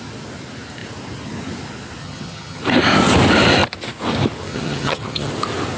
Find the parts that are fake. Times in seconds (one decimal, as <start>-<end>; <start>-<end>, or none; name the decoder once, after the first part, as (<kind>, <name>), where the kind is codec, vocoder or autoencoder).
2.0-2.6 (vocoder, HiFi-GAN); 4.5-5.3